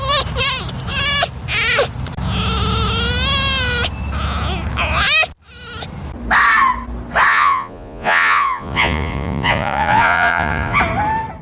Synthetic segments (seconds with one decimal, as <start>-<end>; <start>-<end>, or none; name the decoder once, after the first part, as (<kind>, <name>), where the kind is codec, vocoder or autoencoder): 7.3-10.8 (vocoder, Vocos)